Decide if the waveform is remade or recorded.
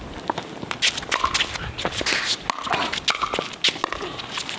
recorded